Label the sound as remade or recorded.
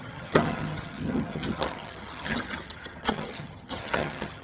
remade